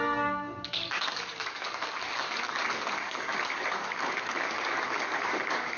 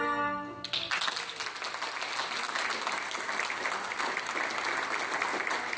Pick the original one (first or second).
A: second